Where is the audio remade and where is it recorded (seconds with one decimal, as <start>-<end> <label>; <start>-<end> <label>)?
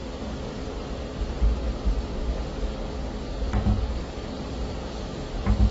0.0-2.1 recorded; 2.1-5.7 remade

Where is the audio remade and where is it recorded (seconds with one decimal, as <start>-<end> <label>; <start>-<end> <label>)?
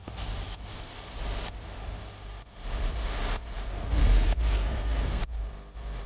0.0-4.0 recorded; 4.0-5.2 remade; 5.2-6.1 recorded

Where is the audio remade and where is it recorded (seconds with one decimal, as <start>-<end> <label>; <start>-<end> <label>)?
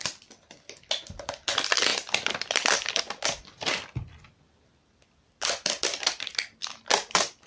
0.0-7.5 remade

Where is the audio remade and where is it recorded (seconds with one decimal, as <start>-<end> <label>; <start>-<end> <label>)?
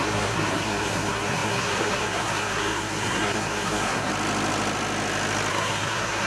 0.0-4.1 remade; 4.1-5.5 recorded; 5.5-6.3 remade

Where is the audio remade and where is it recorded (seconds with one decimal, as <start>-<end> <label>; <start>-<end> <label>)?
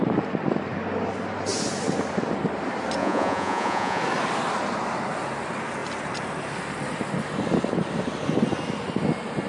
0.0-3.0 recorded; 3.0-4.0 remade; 4.0-9.5 recorded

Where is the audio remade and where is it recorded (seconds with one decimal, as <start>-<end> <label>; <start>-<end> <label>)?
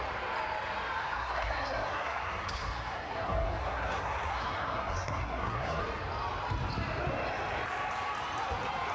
0.0-1.0 recorded; 1.0-5.8 remade; 5.8-8.9 recorded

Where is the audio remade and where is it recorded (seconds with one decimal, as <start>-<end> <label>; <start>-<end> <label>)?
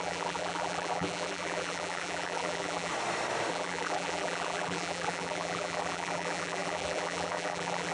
0.0-2.9 remade; 2.9-3.5 recorded; 3.5-7.9 remade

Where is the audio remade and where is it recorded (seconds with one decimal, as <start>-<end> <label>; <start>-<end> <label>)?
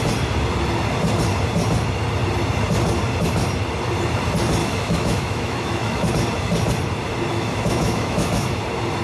0.0-4.6 recorded; 4.6-6.1 remade; 6.1-7.3 recorded; 7.3-8.6 remade; 8.6-9.0 recorded